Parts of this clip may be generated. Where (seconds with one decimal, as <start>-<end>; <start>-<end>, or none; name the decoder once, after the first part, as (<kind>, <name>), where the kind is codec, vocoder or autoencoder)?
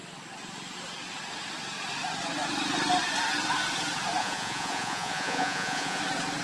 4.2-6.0 (vocoder, Vocos)